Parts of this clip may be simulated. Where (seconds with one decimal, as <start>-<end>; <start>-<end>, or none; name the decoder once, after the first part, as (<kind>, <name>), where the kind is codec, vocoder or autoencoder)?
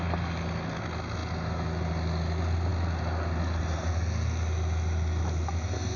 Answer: none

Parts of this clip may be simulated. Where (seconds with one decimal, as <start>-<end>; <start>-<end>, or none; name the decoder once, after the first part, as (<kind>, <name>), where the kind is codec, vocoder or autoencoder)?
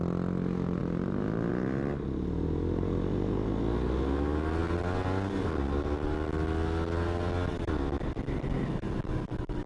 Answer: none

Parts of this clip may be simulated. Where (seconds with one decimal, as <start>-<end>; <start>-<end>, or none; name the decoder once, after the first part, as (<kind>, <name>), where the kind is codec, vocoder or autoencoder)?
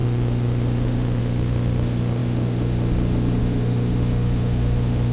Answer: 0.0-5.1 (autoencoder, DAC-VAE)